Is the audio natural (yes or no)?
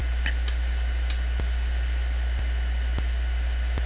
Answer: yes